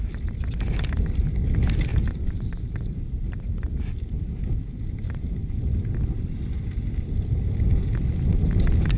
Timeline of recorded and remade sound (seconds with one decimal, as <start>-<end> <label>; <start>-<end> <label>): 0.0-1.9 recorded; 1.9-5.6 remade; 5.6-9.0 recorded